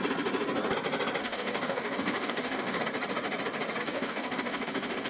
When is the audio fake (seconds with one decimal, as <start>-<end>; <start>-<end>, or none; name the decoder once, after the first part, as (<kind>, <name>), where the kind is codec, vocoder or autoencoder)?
1.2-2.8 (codec, DAC); 3.8-5.1